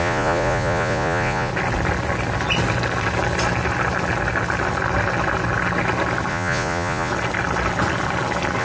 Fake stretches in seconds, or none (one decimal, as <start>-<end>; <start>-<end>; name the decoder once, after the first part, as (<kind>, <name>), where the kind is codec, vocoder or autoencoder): 0.0-1.5 (vocoder, Vocos); 6.3-7.1